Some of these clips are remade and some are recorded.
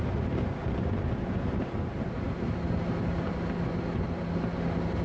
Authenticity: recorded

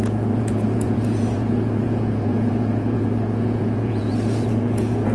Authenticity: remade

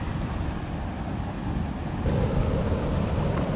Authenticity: recorded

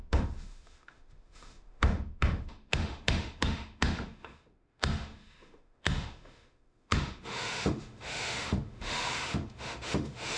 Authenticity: remade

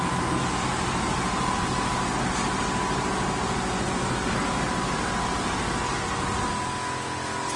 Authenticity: recorded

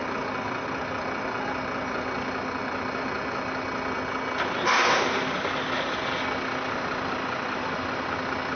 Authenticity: recorded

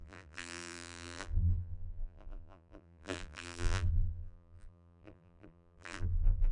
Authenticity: remade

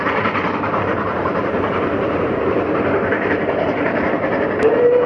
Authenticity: remade